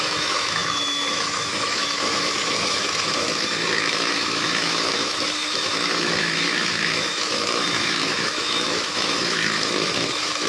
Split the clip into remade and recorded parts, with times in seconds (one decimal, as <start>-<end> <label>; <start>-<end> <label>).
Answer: 0.0-10.5 remade

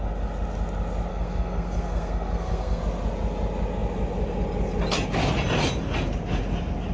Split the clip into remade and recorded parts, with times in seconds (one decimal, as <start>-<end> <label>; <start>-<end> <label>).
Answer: 0.0-1.1 recorded; 1.1-2.8 remade; 2.8-6.9 recorded

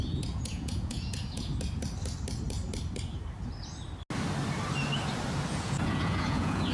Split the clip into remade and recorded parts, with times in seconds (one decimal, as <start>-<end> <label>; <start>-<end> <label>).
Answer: 0.0-1.5 remade; 1.5-5.5 recorded; 5.5-6.7 remade